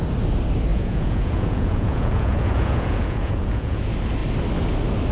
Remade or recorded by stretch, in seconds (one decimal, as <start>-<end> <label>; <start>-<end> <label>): 0.0-0.7 recorded; 0.7-3.8 remade; 3.8-5.1 recorded